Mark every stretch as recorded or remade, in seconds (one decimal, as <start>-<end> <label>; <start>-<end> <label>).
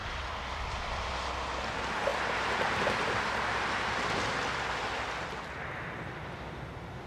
0.0-1.1 remade; 1.1-2.1 recorded; 2.1-6.4 remade; 6.4-7.1 recorded